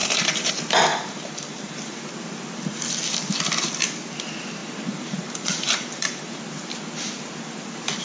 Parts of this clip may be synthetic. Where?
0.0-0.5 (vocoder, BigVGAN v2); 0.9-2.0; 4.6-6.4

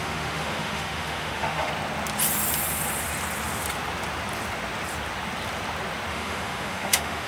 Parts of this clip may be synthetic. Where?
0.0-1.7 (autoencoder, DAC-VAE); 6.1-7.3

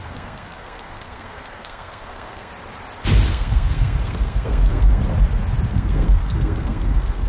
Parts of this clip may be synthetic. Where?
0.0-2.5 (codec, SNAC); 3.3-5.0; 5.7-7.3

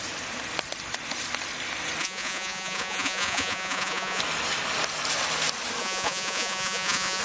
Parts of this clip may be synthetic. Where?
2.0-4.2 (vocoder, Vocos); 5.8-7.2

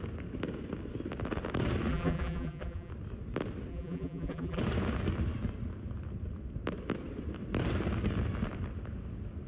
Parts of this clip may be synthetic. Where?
1.9-2.9 (vocoder, BigVGAN v2); 3.7-4.6